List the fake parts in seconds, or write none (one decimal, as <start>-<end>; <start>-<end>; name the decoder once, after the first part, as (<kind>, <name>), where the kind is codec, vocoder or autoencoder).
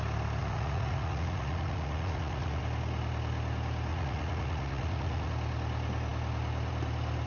0.4-2.6 (vocoder, Vocos); 3.9-5.3